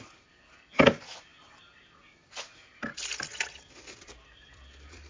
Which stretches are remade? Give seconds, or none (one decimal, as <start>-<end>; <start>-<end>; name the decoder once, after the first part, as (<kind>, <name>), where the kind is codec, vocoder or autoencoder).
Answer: 0.0-5.1 (vocoder, BigVGAN v2)